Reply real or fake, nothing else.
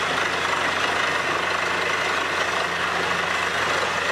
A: real